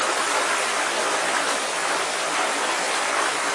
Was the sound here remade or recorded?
recorded